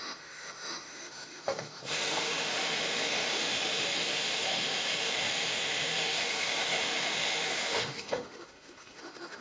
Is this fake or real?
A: fake